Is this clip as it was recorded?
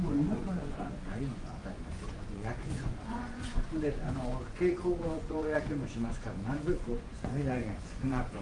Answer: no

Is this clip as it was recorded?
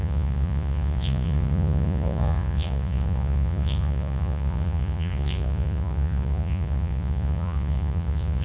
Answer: no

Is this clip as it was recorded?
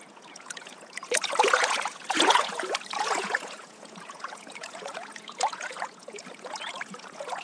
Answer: no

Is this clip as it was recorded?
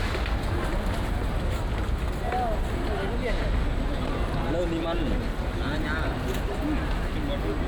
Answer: yes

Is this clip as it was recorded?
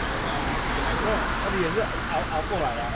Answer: yes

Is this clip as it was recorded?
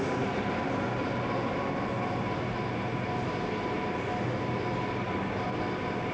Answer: yes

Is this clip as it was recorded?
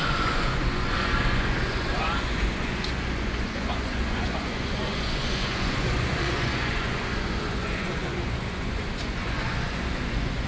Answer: no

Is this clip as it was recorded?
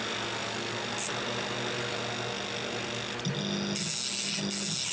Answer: yes